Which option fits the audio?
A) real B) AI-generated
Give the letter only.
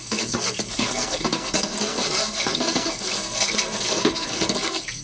B